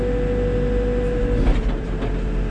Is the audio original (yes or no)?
yes